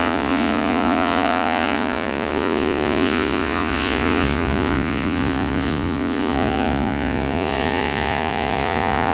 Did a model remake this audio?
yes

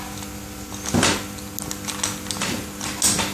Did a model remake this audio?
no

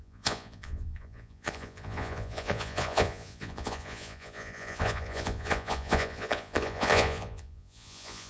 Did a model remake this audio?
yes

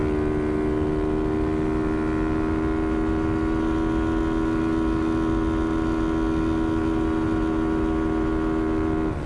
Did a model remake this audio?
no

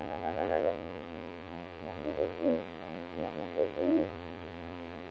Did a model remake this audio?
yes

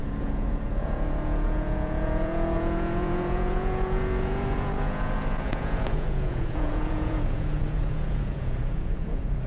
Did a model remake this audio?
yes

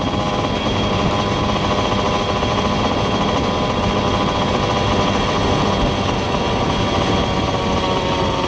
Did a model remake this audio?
no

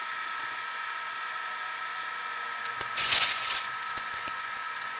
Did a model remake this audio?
yes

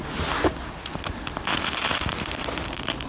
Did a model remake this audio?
no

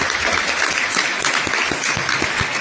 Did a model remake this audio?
no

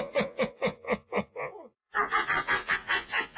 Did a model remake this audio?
yes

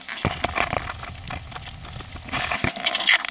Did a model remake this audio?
no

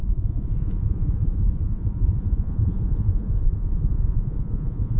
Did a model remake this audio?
yes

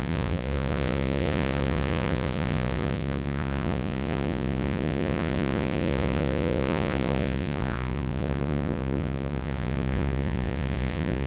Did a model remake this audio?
yes